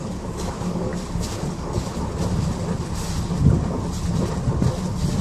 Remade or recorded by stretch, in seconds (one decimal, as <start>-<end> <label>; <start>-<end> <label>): 0.0-0.9 remade; 0.9-1.4 recorded; 1.4-1.9 remade; 1.9-5.2 recorded